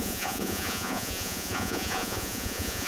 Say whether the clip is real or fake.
fake